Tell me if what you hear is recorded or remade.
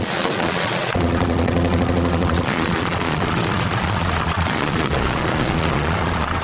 remade